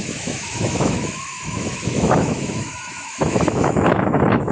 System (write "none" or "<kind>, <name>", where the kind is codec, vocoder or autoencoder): autoencoder, DAC-VAE